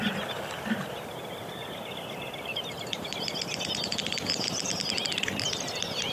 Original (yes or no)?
yes